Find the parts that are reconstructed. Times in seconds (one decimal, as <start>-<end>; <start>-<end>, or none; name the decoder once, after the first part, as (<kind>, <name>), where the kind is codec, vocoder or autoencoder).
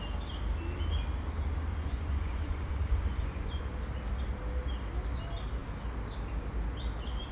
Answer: 1.7-3.6 (vocoder, Vocos)